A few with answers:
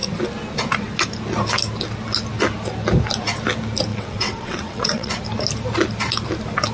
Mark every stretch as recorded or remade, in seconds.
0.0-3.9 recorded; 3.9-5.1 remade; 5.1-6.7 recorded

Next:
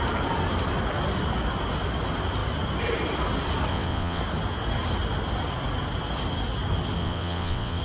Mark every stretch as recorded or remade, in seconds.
0.0-3.7 recorded; 3.7-4.2 remade; 4.2-7.0 recorded; 7.0-7.8 remade

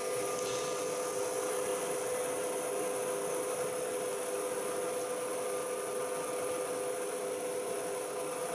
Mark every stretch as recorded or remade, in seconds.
0.0-8.5 recorded